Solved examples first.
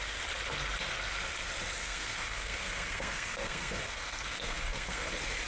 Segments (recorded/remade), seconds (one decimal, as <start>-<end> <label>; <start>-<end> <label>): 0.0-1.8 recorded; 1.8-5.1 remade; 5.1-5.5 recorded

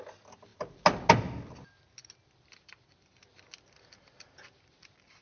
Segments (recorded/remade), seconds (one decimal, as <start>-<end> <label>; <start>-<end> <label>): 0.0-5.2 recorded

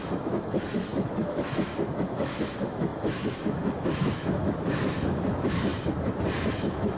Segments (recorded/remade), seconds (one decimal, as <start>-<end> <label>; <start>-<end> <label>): 0.0-5.7 remade; 5.7-6.5 recorded; 6.5-7.0 remade